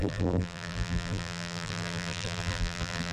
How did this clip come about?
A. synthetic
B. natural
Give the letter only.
A